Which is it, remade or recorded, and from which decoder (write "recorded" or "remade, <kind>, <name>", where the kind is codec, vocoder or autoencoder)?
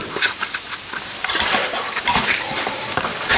remade, vocoder, BigVGAN v2